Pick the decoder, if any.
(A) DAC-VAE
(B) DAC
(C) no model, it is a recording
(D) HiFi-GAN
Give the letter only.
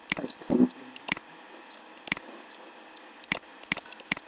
C